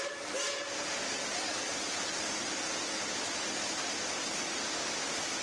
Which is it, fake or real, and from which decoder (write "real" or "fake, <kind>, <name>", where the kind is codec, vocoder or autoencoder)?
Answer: real